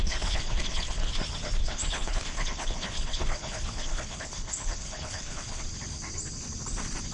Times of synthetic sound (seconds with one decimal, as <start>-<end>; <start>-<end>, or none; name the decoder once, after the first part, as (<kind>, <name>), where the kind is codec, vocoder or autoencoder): 0.0-1.1 (codec, HILCodec); 1.6-5.6